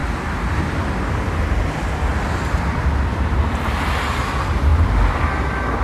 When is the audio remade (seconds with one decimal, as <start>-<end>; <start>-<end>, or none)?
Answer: 2.1-3.4; 4.7-5.8